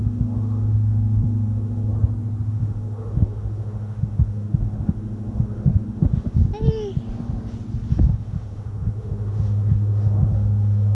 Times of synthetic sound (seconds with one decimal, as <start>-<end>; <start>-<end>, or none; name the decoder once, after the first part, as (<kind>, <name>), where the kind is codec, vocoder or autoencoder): 0.0-1.9 (autoencoder, DAC-VAE); 2.5-6.4; 7.9-10.9